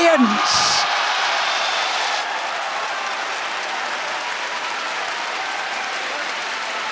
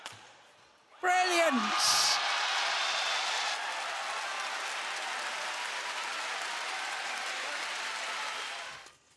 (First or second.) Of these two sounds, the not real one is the first